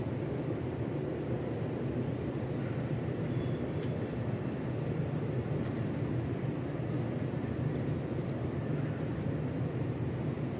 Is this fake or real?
fake